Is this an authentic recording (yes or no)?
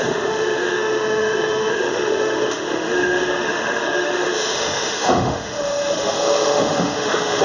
no